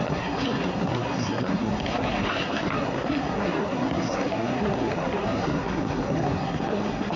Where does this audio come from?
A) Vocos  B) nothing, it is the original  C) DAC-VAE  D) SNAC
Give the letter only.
D